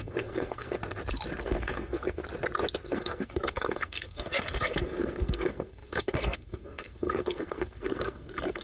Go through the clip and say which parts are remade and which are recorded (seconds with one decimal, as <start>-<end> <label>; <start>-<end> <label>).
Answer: 0.0-0.8 remade; 0.8-1.4 recorded; 1.4-2.2 remade; 2.2-2.9 recorded; 2.9-8.6 remade